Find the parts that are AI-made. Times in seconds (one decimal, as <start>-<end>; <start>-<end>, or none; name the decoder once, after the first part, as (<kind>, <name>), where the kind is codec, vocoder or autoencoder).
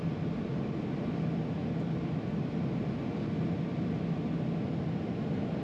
none